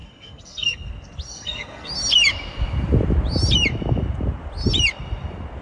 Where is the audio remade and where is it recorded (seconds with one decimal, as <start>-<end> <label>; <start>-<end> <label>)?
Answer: 0.0-0.9 remade; 0.9-1.3 recorded; 1.3-1.9 remade; 1.9-5.6 recorded